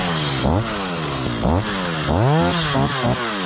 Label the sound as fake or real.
real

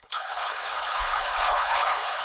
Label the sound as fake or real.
fake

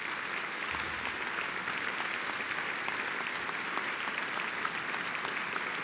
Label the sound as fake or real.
real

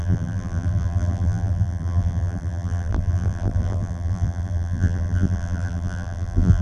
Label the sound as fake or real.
fake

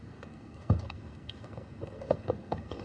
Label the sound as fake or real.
fake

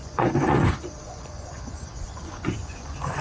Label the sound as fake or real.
fake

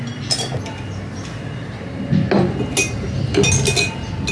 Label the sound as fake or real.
real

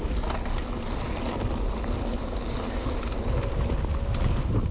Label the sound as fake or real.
real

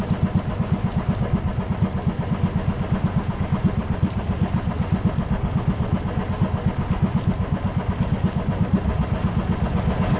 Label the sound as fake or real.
real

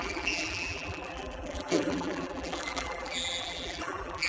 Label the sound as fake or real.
fake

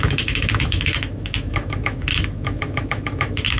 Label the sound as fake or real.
fake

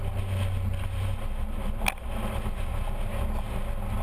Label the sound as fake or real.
real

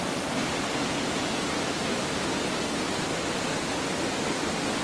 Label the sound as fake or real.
real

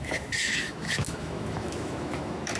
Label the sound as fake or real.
fake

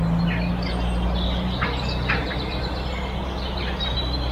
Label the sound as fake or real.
real